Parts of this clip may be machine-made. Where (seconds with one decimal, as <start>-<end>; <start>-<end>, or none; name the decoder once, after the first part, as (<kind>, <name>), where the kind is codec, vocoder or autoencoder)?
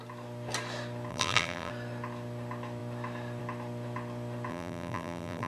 1.1-1.7 (vocoder, BigVGAN v2); 4.5-5.5